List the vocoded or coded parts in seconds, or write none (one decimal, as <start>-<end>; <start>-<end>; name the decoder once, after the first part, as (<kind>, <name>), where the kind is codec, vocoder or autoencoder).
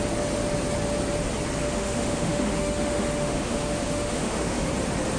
1.6-4.7 (autoencoder, DAC-VAE)